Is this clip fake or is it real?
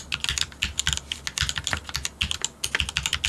real